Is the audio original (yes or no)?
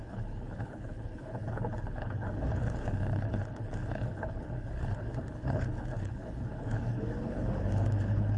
no